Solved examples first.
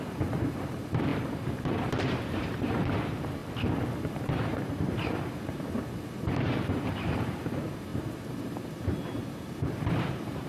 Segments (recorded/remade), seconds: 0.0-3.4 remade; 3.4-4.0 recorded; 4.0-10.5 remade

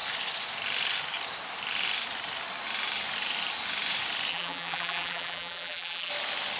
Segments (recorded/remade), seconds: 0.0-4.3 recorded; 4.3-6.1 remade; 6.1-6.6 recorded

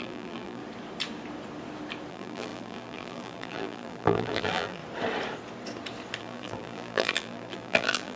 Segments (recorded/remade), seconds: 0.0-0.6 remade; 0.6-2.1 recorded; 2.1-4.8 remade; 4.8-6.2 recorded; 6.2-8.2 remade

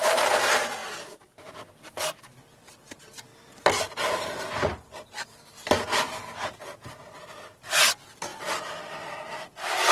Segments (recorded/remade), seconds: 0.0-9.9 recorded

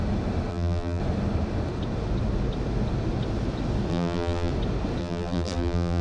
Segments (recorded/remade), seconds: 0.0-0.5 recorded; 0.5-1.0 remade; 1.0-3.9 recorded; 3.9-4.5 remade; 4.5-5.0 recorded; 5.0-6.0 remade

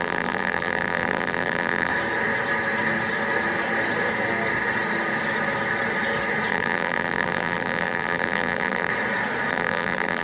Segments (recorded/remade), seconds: 0.0-1.9 remade; 1.9-6.5 recorded; 6.5-8.9 remade; 8.9-9.5 recorded; 9.5-10.2 remade

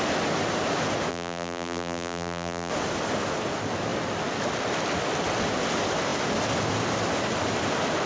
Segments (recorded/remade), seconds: 0.0-1.1 recorded; 1.1-2.7 remade; 2.7-8.1 recorded

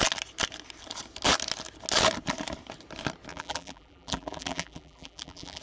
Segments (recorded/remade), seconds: 0.0-3.3 recorded; 3.3-5.6 remade